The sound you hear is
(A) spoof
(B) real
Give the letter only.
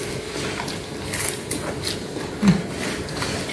B